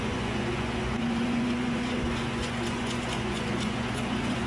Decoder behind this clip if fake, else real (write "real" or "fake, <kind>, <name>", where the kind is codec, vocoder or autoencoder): fake, vocoder, Vocos